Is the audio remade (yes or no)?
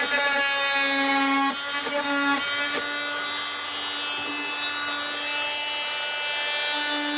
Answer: no